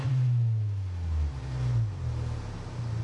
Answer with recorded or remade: recorded